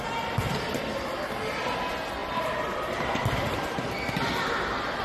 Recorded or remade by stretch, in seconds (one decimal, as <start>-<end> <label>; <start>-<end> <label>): 0.0-2.2 recorded; 2.2-3.9 remade; 3.9-5.0 recorded